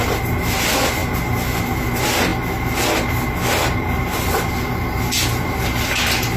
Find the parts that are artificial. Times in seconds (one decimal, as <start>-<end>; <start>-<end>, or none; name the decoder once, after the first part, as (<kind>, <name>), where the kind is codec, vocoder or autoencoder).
none